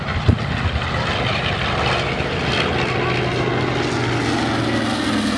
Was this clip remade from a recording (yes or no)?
no